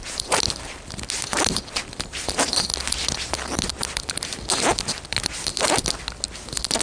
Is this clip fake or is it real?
real